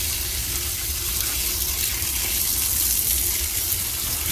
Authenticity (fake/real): real